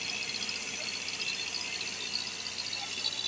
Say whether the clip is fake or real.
real